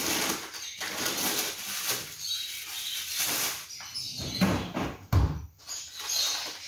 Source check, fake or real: real